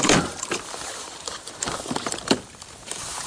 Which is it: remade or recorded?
remade